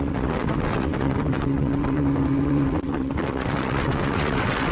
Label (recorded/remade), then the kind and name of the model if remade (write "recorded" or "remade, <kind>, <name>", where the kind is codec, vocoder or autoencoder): remade, vocoder, WaveNeXt